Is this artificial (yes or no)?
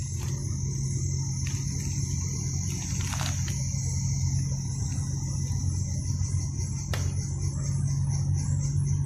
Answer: no